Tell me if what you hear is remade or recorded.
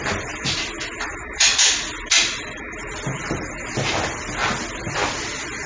recorded